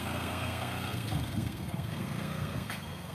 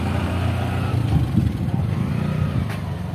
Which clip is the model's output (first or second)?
first